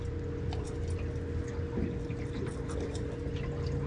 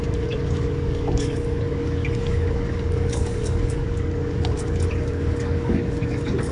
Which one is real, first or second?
first